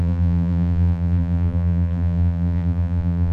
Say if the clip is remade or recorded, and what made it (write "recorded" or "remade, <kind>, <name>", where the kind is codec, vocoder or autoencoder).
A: remade, vocoder, BigVGAN v2